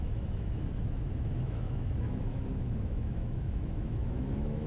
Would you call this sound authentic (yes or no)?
no